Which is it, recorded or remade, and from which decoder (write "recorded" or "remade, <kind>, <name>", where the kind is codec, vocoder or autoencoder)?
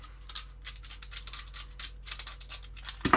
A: recorded